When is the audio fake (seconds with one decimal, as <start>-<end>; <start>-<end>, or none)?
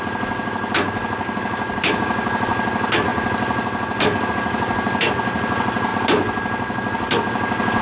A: none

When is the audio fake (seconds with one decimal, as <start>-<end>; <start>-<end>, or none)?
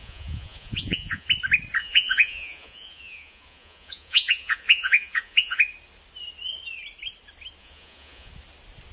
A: 0.0-1.3; 1.8-5.6; 7.6-8.3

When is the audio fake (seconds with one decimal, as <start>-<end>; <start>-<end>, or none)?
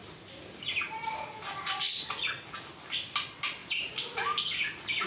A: none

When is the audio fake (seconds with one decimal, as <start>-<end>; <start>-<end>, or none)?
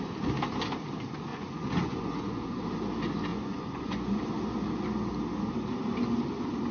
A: 1.3-2.6; 3.3-4.2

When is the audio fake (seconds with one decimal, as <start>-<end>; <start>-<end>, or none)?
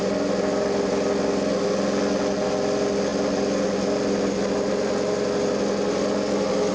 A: none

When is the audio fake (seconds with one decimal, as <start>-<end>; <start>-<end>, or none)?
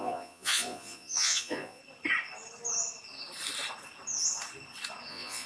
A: 0.0-1.8; 5.1-5.5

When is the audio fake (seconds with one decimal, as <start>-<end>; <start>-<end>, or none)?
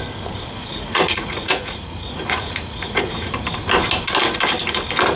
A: 0.7-3.3